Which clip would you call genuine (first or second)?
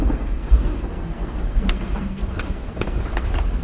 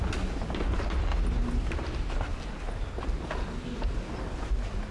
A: second